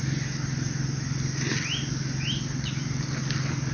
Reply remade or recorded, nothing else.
recorded